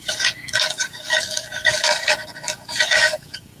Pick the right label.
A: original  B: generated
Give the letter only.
B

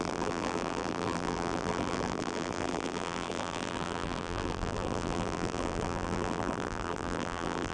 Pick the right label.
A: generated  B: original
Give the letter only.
A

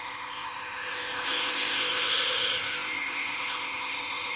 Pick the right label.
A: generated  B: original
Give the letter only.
A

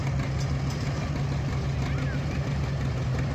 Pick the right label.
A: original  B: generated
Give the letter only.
A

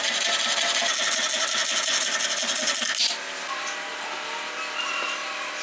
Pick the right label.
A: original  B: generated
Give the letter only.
A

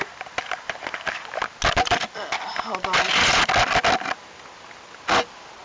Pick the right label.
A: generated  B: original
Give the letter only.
B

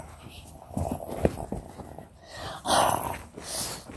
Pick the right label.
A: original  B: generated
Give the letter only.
A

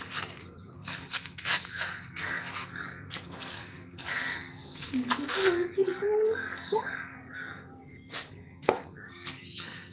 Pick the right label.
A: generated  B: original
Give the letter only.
A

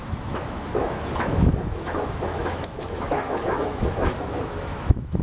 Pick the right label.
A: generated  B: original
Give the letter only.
A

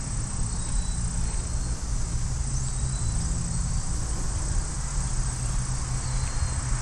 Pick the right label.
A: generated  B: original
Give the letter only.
B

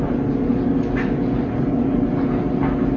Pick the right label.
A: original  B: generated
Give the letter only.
A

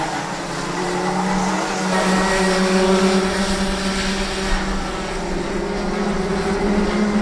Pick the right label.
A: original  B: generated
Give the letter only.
A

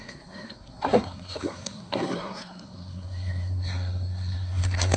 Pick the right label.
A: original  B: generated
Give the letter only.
B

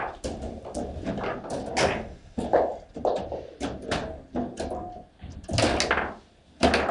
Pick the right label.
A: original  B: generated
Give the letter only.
A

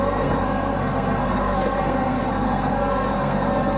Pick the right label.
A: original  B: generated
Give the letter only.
B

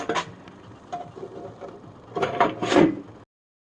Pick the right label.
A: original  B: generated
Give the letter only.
A